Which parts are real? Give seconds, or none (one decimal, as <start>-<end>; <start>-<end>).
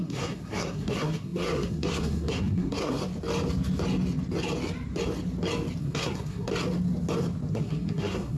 3.0-5.8; 6.5-7.5